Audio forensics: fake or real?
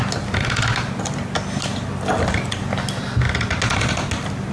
real